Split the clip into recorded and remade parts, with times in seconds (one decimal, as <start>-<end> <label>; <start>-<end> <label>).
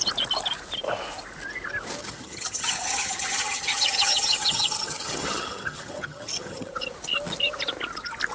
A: 0.0-2.0 recorded; 2.0-6.7 remade; 6.7-8.3 recorded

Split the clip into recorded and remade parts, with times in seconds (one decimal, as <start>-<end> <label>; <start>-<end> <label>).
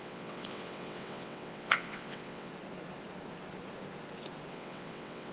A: 0.0-2.5 remade; 2.5-4.5 recorded; 4.5-5.3 remade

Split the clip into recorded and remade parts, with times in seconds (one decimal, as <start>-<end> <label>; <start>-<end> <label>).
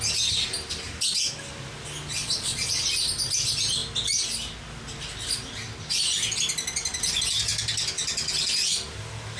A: 0.0-2.2 recorded; 2.2-2.7 remade; 2.7-9.4 recorded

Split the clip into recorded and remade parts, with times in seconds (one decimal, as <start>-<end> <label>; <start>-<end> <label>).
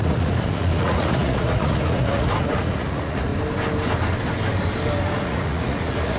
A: 0.0-3.3 remade; 3.3-5.2 recorded; 5.2-6.2 remade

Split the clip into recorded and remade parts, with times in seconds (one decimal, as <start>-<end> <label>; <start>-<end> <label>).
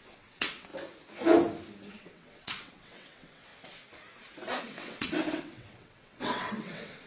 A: 0.0-0.7 remade; 0.7-1.9 recorded; 1.9-3.5 remade; 3.5-4.6 recorded; 4.6-7.1 remade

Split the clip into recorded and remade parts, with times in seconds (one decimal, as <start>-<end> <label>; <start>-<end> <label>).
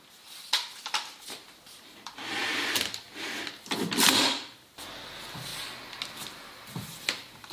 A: 0.0-2.4 remade; 2.4-3.8 recorded; 3.8-5.5 remade; 5.5-6.1 recorded; 6.1-7.5 remade